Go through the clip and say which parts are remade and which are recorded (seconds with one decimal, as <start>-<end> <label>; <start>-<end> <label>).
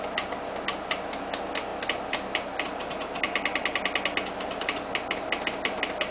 0.0-6.1 recorded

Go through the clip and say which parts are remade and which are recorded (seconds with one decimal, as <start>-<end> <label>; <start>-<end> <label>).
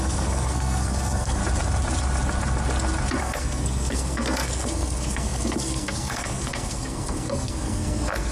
0.0-1.4 remade; 1.4-3.2 recorded; 3.2-8.3 remade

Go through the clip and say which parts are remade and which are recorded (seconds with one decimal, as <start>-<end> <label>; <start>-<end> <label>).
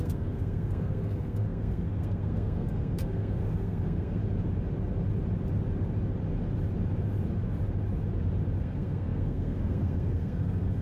0.0-4.2 remade; 4.2-8.6 recorded; 8.6-10.8 remade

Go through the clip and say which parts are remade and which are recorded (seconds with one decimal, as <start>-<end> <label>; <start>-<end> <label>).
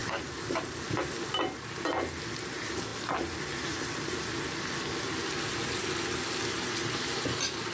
0.0-7.7 recorded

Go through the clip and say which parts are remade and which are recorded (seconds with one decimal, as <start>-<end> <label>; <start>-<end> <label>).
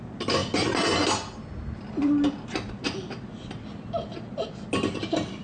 0.0-5.4 recorded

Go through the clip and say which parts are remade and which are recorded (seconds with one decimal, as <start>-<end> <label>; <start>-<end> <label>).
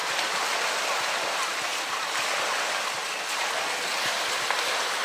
0.0-5.0 recorded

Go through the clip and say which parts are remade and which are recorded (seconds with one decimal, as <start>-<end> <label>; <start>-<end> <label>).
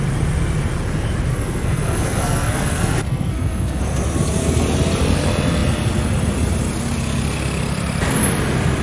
0.0-1.3 recorded; 1.3-3.8 remade; 3.8-8.8 recorded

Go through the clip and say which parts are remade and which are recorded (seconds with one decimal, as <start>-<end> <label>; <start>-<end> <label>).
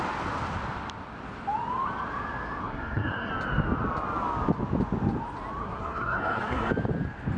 0.0-2.6 recorded; 2.6-3.3 remade; 3.3-5.6 recorded; 5.6-6.7 remade; 6.7-7.4 recorded